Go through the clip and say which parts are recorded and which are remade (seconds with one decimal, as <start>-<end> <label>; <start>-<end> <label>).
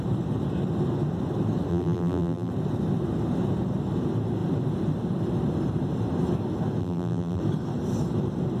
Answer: 0.0-1.7 recorded; 1.7-2.5 remade; 2.5-6.8 recorded; 6.8-7.4 remade; 7.4-8.6 recorded